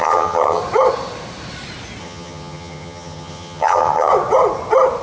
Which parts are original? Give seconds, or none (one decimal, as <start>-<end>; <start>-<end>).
0.6-2.0; 4.1-5.0